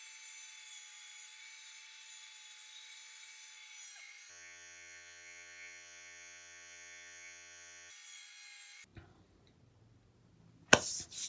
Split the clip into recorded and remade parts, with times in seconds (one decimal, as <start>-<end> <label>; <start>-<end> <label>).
0.0-4.3 recorded; 4.3-7.9 remade; 7.9-11.3 recorded